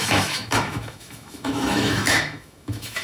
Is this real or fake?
fake